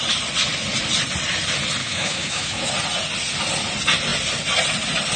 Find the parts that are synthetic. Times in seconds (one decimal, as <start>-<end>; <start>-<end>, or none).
1.8-2.7

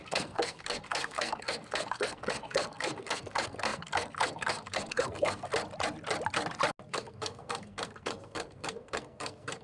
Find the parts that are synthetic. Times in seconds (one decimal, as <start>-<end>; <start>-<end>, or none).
0.0-5.5; 6.9-9.6

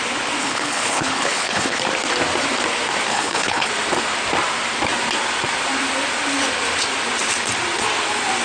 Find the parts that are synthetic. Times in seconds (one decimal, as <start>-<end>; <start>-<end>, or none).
0.4-1.8; 3.1-3.7

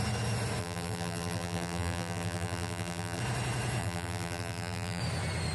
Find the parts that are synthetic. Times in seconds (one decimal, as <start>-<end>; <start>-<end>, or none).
0.6-3.2; 3.8-5.0

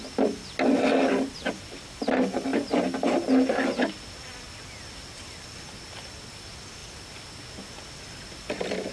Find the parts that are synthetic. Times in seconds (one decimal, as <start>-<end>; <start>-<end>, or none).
none

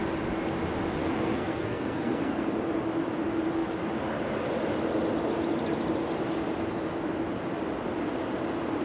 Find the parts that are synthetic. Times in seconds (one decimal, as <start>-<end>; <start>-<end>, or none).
1.0-2.5

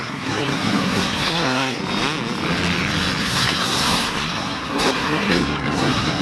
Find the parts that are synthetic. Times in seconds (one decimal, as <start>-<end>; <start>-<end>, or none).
0.0-1.8; 3.2-6.2